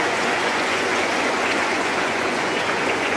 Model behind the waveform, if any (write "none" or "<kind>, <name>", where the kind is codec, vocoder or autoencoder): vocoder, Vocos